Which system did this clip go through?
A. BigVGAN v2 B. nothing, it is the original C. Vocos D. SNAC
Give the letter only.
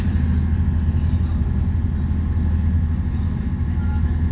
B